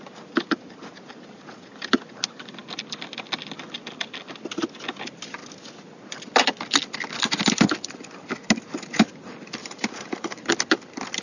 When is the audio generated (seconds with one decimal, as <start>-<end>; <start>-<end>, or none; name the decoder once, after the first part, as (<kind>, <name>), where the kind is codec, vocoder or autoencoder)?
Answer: 9.6-10.5 (vocoder, BigVGAN v2)